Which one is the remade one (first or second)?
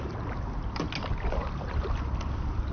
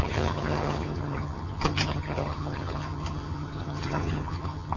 second